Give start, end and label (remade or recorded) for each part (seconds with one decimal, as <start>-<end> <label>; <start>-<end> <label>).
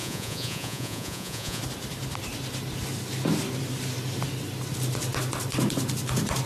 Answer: 0.0-1.6 remade; 1.6-6.5 recorded